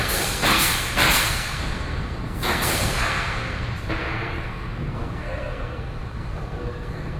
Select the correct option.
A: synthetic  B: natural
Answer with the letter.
A